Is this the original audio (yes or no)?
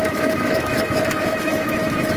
no